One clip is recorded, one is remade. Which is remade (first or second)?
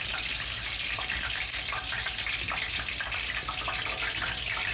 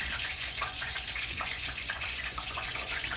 second